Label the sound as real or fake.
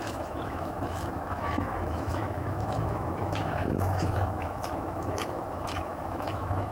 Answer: fake